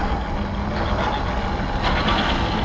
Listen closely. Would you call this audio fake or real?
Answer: real